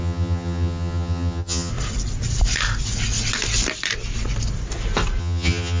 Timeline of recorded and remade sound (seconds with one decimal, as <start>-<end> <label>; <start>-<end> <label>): 0.0-1.7 remade; 1.7-5.2 recorded; 5.2-5.8 remade